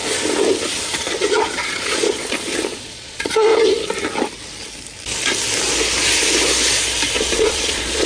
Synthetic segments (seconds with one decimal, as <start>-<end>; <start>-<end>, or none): 0.9-3.5; 7.1-8.1